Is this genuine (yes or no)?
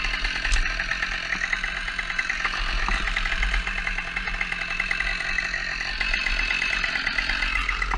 yes